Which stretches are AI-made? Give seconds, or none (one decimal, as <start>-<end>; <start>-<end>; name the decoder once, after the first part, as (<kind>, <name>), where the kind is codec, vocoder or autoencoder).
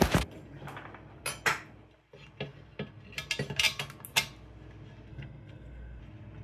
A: 5.1-6.0 (codec, SNAC)